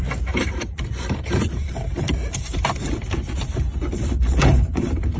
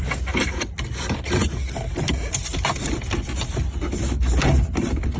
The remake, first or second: first